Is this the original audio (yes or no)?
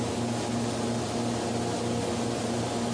yes